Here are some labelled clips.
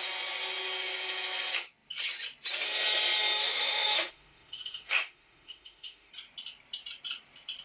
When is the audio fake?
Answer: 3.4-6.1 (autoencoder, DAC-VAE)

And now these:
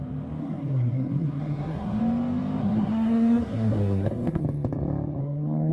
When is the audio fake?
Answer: 0.4-2.0 (codec, SNAC); 2.6-4.4; 5.2-5.7

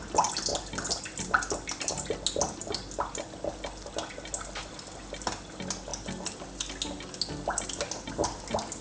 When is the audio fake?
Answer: none

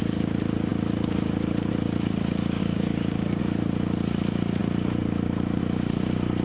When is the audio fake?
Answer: 2.6-3.4 (codec, DAC)

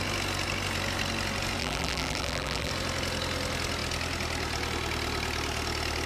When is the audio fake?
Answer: 1.6-2.7 (vocoder, BigVGAN v2)